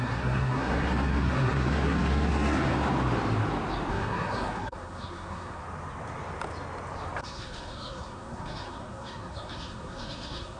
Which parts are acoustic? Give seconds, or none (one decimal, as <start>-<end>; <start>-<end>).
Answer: 2.7-3.9; 5.6-7.2